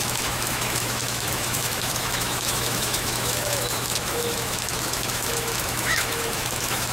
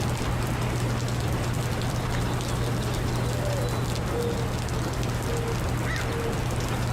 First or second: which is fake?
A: first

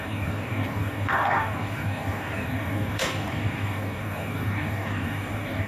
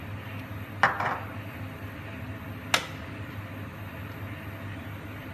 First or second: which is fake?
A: first